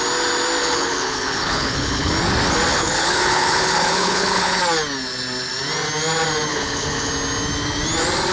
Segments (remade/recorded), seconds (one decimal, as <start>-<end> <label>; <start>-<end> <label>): 0.0-0.6 recorded; 0.6-2.1 remade; 2.1-2.7 recorded; 2.7-4.6 remade; 4.6-6.5 recorded; 6.5-7.1 remade; 7.1-8.3 recorded